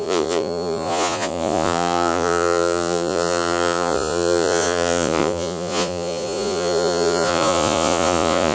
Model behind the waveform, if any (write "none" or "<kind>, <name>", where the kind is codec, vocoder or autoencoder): vocoder, Vocos